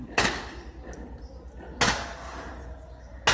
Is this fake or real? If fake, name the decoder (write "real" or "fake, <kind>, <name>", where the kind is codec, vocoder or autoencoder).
real